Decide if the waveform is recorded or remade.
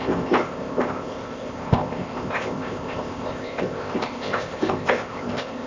remade